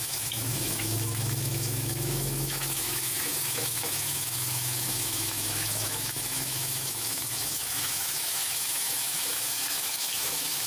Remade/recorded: remade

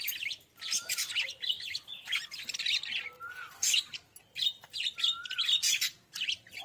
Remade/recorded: recorded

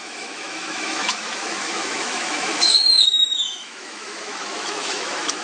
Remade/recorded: remade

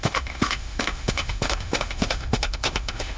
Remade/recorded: remade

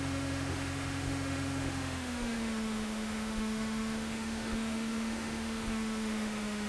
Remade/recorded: remade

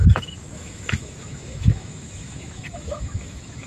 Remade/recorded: remade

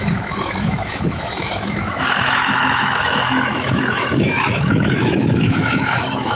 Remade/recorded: remade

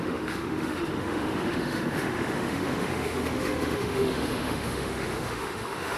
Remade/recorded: remade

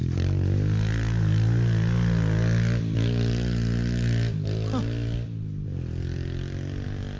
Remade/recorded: recorded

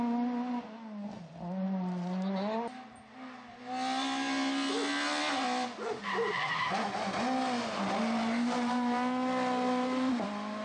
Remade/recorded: recorded